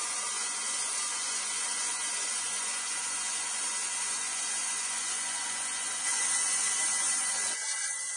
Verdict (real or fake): fake